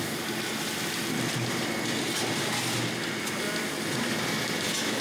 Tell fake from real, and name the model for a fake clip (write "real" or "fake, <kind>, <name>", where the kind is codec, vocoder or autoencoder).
real